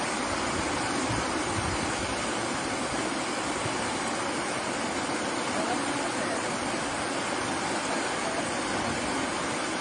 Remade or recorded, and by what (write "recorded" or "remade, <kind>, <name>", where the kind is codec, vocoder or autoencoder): recorded